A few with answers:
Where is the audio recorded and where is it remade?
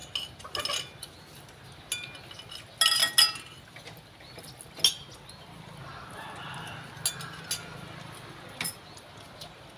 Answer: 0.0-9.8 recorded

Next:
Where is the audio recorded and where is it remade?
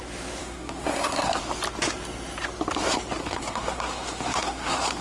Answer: 0.0-0.4 recorded; 0.4-1.4 remade; 1.4-3.2 recorded; 3.2-5.0 remade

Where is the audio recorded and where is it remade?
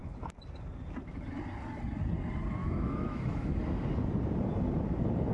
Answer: 0.0-2.6 recorded; 2.6-3.6 remade; 3.6-5.3 recorded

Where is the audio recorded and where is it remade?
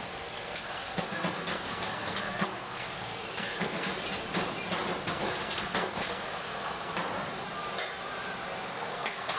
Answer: 0.0-3.9 remade; 3.9-5.1 recorded; 5.1-6.9 remade; 6.9-8.7 recorded; 8.7-9.4 remade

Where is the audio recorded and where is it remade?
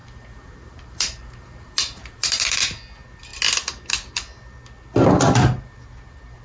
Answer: 0.0-2.6 remade; 2.6-6.4 recorded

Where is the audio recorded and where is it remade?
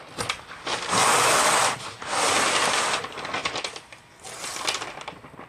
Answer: 0.0-5.5 recorded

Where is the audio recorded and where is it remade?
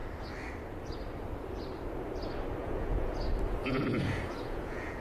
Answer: 0.0-2.6 recorded; 2.6-3.2 remade; 3.2-3.6 recorded; 3.6-5.0 remade